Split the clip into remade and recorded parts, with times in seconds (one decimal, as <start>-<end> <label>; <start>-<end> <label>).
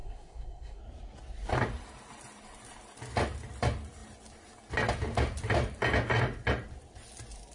0.0-0.8 remade; 0.8-7.5 recorded